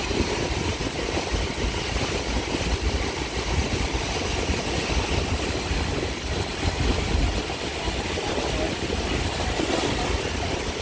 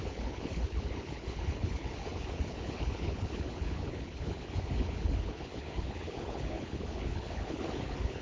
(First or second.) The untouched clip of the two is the first